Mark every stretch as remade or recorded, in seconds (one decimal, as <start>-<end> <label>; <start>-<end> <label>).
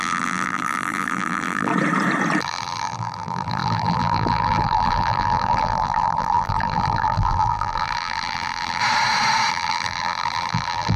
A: 0.0-1.7 remade; 1.7-2.4 recorded; 2.4-8.8 remade; 8.8-9.5 recorded; 9.5-11.0 remade